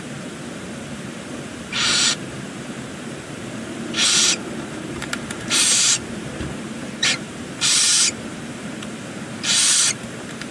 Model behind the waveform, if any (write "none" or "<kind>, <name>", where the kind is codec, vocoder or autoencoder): vocoder, BigVGAN v2